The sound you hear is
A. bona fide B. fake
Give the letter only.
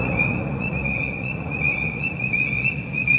B